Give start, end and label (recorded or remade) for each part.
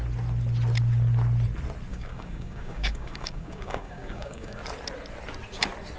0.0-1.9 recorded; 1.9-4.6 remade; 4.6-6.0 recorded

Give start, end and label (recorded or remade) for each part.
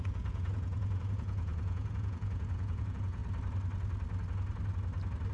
0.0-3.2 remade; 3.2-5.3 recorded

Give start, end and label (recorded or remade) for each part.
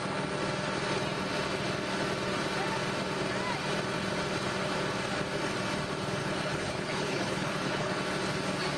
0.0-6.2 recorded; 6.2-7.9 remade; 7.9-8.8 recorded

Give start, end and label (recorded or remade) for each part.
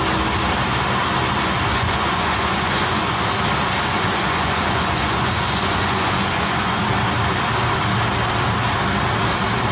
0.0-1.7 recorded; 1.7-3.2 remade; 3.2-3.9 recorded; 3.9-6.8 remade; 6.8-9.7 recorded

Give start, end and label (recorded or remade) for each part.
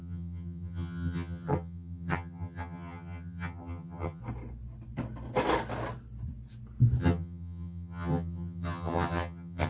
0.0-4.2 remade; 4.2-7.0 recorded; 7.0-9.7 remade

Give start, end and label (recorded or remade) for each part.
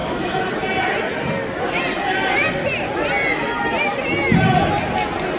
0.0-0.5 remade; 0.5-5.4 recorded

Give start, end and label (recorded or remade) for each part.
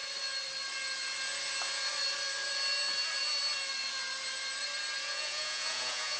0.0-5.1 recorded; 5.1-6.2 remade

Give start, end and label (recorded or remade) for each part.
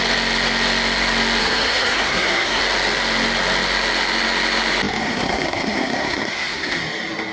0.0-1.4 recorded; 1.4-2.6 remade; 2.6-5.0 recorded; 5.0-6.8 remade; 6.8-7.3 recorded